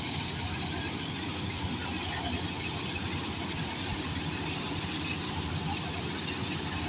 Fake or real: real